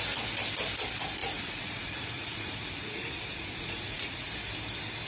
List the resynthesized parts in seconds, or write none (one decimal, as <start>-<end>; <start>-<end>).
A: 1.2-4.3